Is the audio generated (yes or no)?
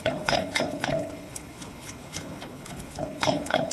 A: yes